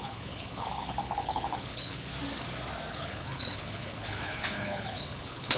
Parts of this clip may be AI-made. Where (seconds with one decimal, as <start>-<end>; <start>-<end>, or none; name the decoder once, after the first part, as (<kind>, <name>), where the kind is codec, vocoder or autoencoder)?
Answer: 0.0-2.1 (codec, HILCodec); 2.9-5.6